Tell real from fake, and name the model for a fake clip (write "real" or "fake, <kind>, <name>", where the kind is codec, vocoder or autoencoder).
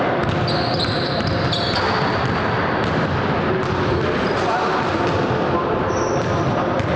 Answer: real